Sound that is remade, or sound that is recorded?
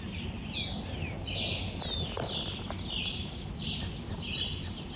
recorded